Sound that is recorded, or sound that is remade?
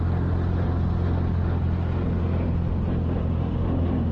recorded